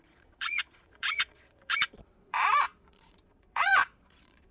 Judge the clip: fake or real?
fake